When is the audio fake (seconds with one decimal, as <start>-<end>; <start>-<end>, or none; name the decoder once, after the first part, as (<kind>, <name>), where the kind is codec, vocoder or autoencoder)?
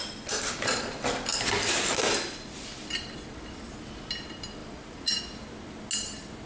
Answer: 4.6-5.2 (vocoder, BigVGAN v2)